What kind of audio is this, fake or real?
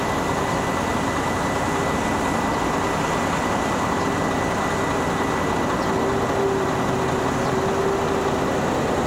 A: real